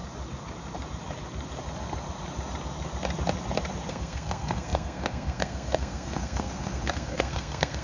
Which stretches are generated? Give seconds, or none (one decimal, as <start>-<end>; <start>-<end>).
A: 3.9-7.8